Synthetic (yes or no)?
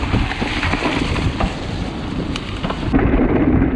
no